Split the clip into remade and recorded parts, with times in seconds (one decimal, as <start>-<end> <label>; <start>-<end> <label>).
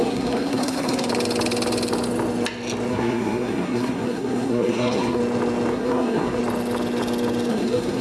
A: 0.0-1.1 remade; 1.1-2.9 recorded; 2.9-5.2 remade; 5.2-5.7 recorded; 5.7-6.4 remade; 6.4-7.5 recorded; 7.5-8.0 remade